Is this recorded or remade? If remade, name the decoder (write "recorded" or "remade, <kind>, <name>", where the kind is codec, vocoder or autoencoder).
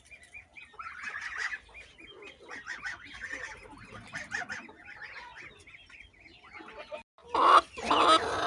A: recorded